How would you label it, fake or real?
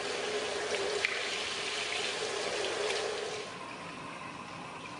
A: real